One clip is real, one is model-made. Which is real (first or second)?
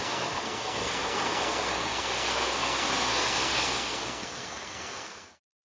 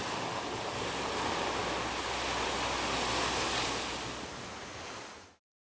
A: second